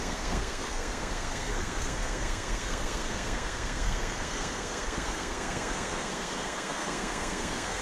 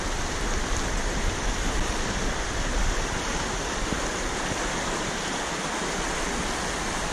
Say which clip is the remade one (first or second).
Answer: first